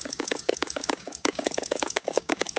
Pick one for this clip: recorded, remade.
remade